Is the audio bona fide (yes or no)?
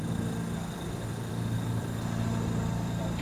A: no